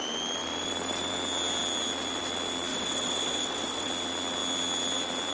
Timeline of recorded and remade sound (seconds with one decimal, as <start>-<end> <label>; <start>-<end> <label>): 0.0-2.7 recorded; 2.7-3.9 remade; 3.9-5.3 recorded